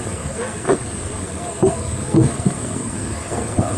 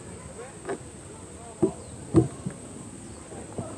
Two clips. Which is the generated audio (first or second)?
first